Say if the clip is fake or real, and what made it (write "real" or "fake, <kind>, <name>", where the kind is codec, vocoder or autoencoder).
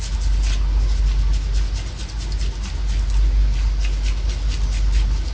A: real